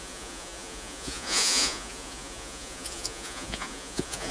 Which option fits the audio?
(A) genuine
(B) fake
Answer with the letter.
B